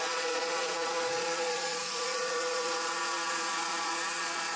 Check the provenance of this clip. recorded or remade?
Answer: remade